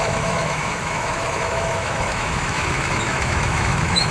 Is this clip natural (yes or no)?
no